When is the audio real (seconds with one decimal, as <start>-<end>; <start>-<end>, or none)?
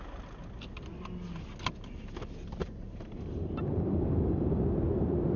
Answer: 0.0-2.6; 4.6-5.4